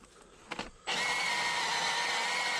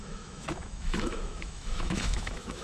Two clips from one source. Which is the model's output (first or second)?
second